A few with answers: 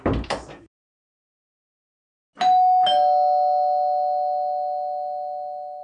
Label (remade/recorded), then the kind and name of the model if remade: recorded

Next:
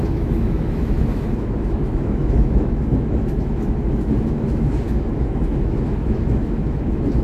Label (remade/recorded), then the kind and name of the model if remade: remade, autoencoder, DAC-VAE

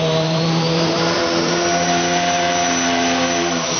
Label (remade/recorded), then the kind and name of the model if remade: remade, vocoder, BigVGAN v2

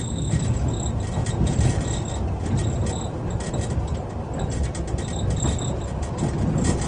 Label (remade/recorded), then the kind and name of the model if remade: recorded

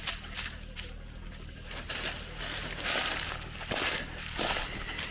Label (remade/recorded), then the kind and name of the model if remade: recorded